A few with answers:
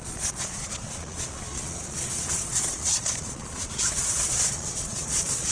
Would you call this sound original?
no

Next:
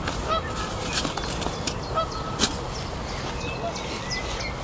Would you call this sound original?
yes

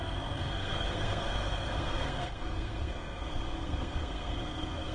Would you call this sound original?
no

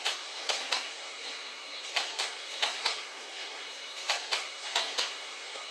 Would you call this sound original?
no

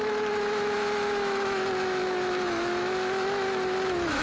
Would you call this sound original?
no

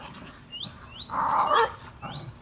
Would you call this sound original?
yes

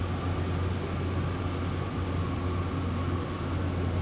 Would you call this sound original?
yes